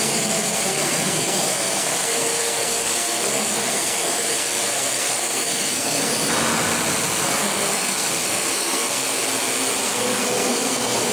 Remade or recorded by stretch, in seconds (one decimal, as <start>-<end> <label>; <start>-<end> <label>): 0.0-6.1 remade; 6.1-7.2 recorded; 7.2-9.2 remade; 9.2-9.8 recorded; 9.8-11.1 remade